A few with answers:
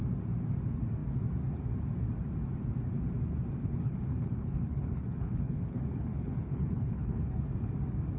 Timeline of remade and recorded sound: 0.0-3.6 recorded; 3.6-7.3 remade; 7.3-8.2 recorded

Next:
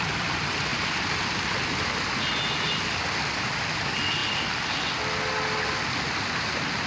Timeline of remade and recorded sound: 0.0-6.9 recorded

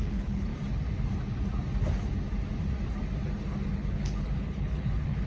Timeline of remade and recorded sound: 0.0-0.5 remade; 0.5-3.7 recorded; 3.7-5.3 remade

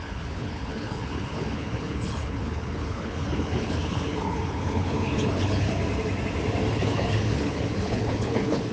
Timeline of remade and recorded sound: 0.0-5.8 remade; 5.8-6.7 recorded; 6.7-8.7 remade